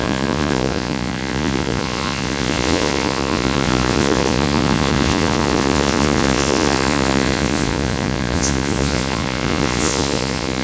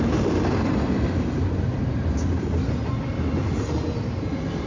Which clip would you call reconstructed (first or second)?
first